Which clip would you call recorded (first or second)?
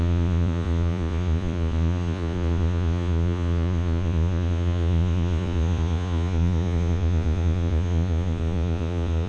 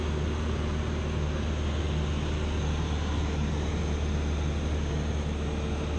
second